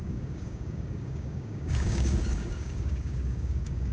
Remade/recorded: remade